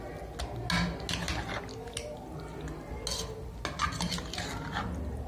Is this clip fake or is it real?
real